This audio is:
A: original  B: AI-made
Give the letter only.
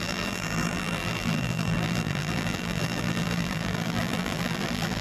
B